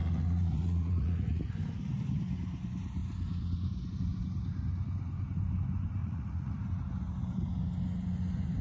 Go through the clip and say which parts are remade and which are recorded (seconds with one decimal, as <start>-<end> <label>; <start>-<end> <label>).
0.0-1.5 remade; 1.5-6.0 recorded; 6.0-6.6 remade; 6.6-8.6 recorded